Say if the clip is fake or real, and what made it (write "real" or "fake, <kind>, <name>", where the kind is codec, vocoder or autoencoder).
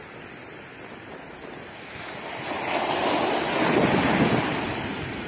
real